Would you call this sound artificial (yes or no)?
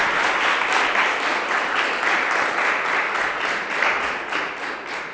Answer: no